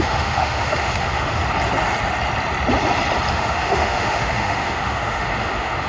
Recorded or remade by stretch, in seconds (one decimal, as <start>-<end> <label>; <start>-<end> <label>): 0.0-1.4 remade; 1.4-3.3 recorded; 3.3-5.9 remade

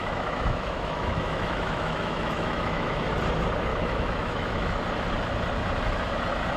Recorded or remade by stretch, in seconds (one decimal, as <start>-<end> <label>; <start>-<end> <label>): 0.0-3.0 remade; 3.0-3.7 recorded; 3.7-4.8 remade; 4.8-6.6 recorded

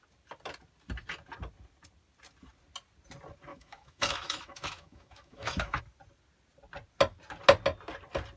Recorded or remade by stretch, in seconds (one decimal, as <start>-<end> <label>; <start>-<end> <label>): 0.0-3.5 recorded; 3.5-5.8 remade; 5.8-8.4 recorded

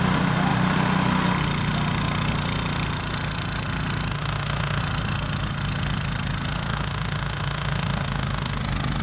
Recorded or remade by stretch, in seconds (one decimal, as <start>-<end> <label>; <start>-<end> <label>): 0.0-4.1 recorded; 4.1-4.8 remade; 4.8-6.7 recorded; 6.7-8.6 remade; 8.6-9.0 recorded

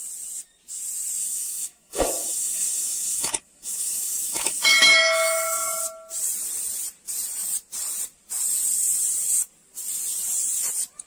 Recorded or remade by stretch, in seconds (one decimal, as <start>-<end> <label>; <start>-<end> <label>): 0.0-1.2 recorded; 1.2-5.8 remade; 5.8-11.1 recorded

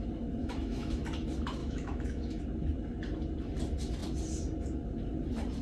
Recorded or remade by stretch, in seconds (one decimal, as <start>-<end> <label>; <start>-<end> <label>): 0.0-0.4 recorded; 0.4-1.0 remade; 1.0-1.6 recorded; 1.6-2.4 remade; 2.4-5.6 recorded

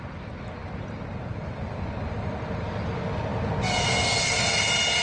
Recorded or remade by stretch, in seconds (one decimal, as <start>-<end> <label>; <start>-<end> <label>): 0.0-5.0 recorded

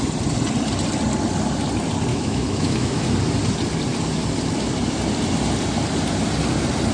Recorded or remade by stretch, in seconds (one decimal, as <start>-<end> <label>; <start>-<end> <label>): 0.0-2.1 recorded; 2.1-3.0 remade; 3.0-6.9 recorded